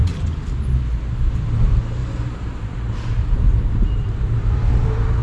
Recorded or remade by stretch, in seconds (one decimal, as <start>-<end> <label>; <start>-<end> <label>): 0.0-2.0 recorded; 2.0-5.2 remade